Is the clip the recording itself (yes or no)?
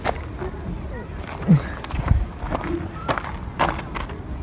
yes